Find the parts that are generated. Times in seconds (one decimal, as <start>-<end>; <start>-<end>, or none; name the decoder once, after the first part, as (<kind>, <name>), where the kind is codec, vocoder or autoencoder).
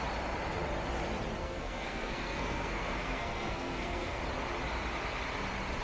1.4-4.2 (codec, SNAC)